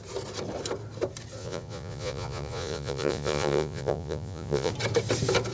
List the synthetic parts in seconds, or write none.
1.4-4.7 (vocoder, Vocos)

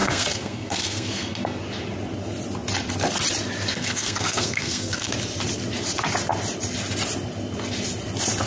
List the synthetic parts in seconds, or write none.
0.0-1.6 (codec, SNAC); 3.7-5.1

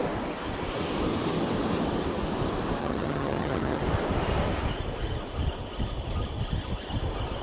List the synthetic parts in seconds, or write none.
2.8-3.8 (vocoder, HiFi-GAN)